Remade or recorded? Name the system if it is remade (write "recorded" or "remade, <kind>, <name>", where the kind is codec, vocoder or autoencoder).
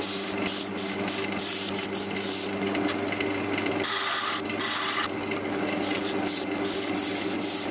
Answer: recorded